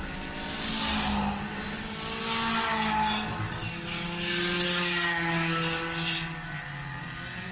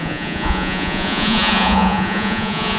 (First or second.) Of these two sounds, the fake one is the second